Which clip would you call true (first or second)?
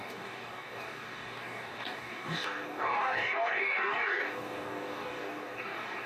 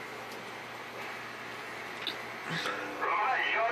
second